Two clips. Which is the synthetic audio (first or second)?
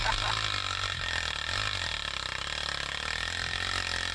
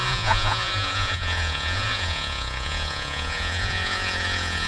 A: second